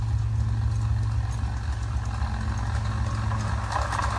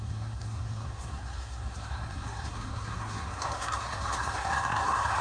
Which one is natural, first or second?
first